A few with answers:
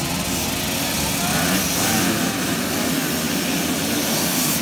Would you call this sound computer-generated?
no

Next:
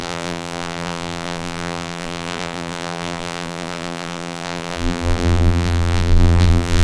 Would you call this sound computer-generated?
yes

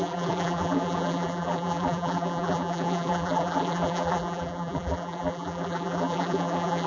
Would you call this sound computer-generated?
yes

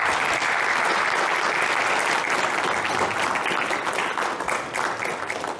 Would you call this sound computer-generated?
no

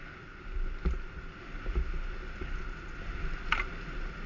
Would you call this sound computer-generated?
yes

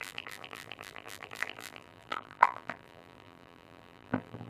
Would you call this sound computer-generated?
yes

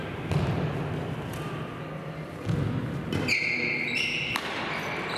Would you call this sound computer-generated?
no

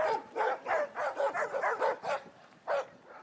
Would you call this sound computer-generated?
yes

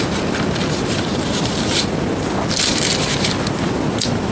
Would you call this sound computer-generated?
yes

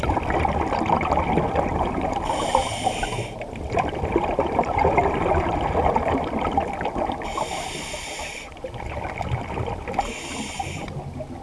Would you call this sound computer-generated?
no